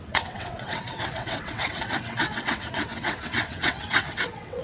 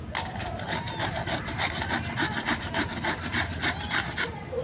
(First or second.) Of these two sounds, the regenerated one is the first